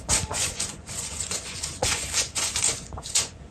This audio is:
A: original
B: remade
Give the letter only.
B